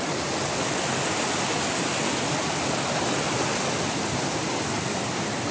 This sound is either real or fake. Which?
real